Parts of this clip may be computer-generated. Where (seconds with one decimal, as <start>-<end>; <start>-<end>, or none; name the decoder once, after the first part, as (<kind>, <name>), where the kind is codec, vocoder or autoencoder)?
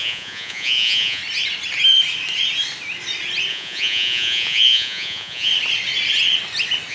0.0-1.2 (vocoder, Vocos); 3.5-5.5